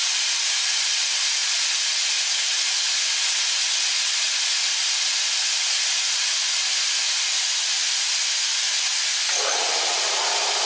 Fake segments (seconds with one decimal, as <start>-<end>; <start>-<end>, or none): none